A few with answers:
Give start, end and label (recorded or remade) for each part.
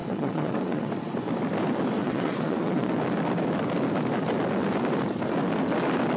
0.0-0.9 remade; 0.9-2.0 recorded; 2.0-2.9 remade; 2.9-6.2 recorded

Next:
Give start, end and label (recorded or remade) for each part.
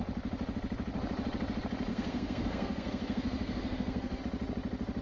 0.0-1.9 recorded; 1.9-4.2 remade; 4.2-5.0 recorded